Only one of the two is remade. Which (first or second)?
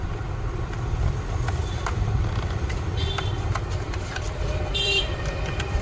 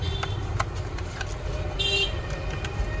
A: first